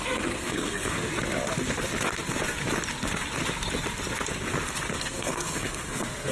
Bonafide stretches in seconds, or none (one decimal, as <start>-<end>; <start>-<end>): 1.1-4.9